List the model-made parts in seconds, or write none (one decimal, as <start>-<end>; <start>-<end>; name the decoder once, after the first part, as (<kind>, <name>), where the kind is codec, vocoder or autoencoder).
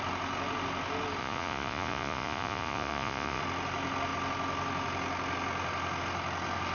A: 1.2-3.4 (vocoder, Vocos)